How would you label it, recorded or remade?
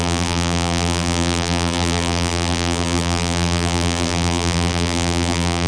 remade